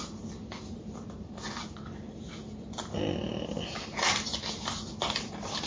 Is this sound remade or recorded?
recorded